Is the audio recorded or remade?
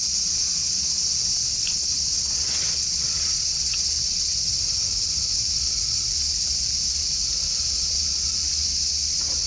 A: recorded